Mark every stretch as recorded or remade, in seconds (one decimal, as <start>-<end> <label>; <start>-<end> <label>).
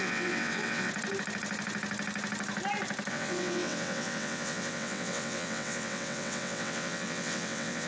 0.0-0.9 remade; 0.9-3.1 recorded; 3.1-7.9 remade